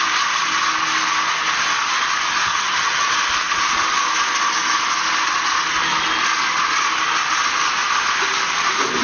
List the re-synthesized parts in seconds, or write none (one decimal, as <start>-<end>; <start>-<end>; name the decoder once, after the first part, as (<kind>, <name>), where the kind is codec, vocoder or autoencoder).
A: 2.5-3.1 (vocoder, HiFi-GAN)